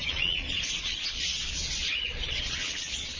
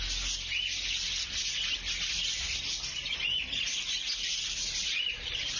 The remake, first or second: first